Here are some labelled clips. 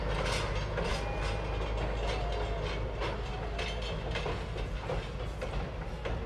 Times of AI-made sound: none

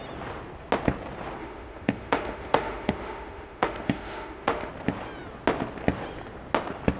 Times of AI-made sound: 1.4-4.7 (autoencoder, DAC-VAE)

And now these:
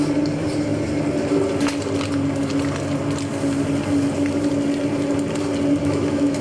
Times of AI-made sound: 5.8-6.4 (autoencoder, DAC-VAE)

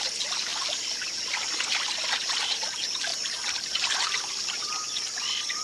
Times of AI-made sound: none

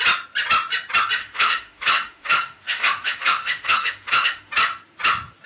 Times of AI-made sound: 1.2-4.5 (autoencoder, DAC-VAE)

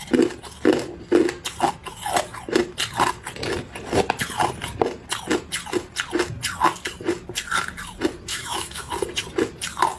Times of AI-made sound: 8.3-8.9 (autoencoder, DAC-VAE)

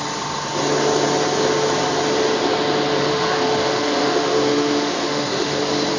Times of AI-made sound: 3.1-5.6 (autoencoder, DAC-VAE)

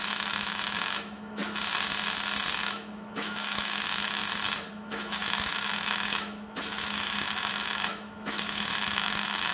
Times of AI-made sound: 0.0-1.4 (autoencoder, DAC-VAE); 2.6-4.2; 4.7-9.5